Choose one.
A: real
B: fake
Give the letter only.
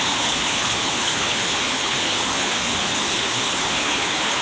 B